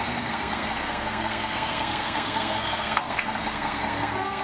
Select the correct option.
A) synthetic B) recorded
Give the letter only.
A